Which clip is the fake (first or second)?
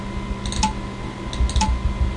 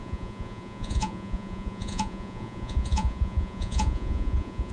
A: second